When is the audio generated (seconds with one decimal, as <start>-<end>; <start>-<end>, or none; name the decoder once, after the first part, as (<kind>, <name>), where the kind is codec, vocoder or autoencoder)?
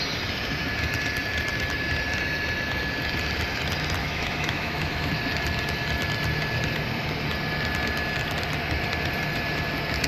4.0-5.1 (autoencoder, DAC-VAE)